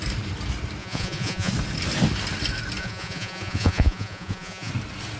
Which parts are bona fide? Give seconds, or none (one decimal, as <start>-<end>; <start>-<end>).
0.0-0.8; 1.5-2.8; 4.7-5.2